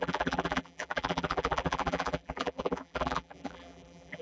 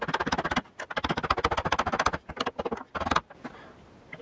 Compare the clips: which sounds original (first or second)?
second